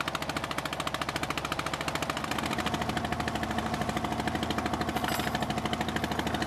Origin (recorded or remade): recorded